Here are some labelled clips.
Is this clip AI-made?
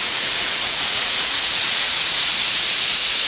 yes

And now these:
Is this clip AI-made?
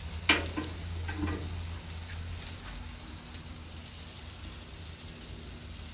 no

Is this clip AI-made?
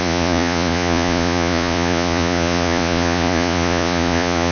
yes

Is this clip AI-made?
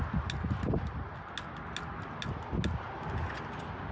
no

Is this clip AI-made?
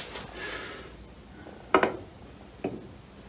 no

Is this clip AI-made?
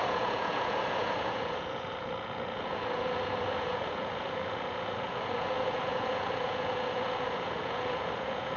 yes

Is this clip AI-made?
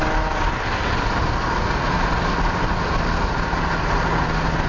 no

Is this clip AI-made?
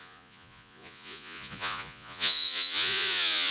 yes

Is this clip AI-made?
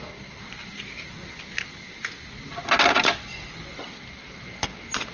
no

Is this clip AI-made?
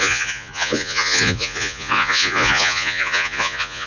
yes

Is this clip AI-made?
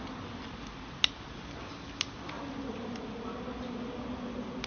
no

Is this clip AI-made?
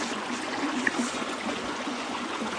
yes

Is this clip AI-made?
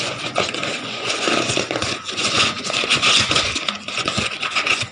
yes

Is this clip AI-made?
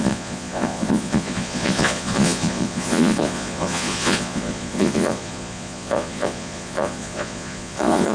yes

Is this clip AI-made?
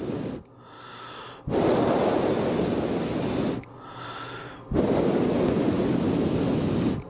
no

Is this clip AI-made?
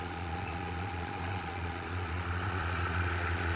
yes